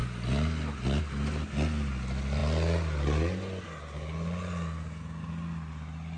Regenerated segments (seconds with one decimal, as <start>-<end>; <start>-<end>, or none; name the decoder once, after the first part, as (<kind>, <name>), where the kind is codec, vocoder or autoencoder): none